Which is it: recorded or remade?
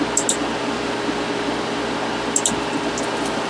recorded